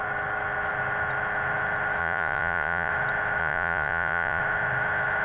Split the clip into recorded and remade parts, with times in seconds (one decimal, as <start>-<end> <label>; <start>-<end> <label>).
0.0-2.0 recorded; 2.0-2.9 remade; 2.9-3.4 recorded; 3.4-4.4 remade; 4.4-5.2 recorded

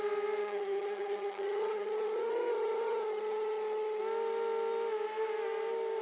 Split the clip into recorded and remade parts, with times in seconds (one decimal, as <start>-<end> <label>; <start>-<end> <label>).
0.0-0.4 recorded; 0.4-4.0 remade; 4.0-6.0 recorded

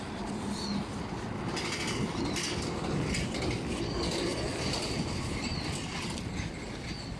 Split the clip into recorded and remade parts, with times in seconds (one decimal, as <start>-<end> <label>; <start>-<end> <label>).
0.0-7.2 recorded

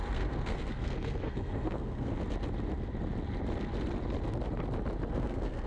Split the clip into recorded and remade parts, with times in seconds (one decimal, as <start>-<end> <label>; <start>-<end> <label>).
0.0-2.1 remade; 2.1-5.1 recorded; 5.1-5.7 remade

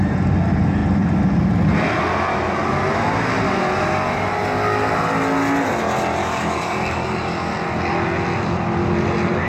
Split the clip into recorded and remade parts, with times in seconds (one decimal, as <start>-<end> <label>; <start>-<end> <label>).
0.0-6.2 recorded; 6.2-7.5 remade; 7.5-9.5 recorded

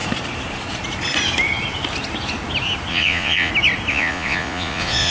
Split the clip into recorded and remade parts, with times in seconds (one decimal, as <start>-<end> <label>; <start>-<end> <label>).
0.0-2.9 recorded; 2.9-3.5 remade; 3.5-3.9 recorded; 3.9-5.1 remade